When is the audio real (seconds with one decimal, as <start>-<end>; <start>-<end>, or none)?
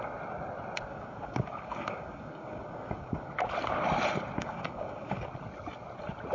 0.0-0.9; 3.3-4.4; 5.3-6.3